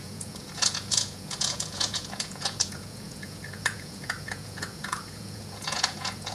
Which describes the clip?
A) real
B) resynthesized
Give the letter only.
B